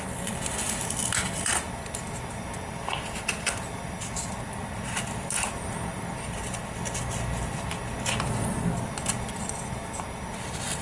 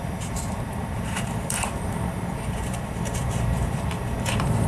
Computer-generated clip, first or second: second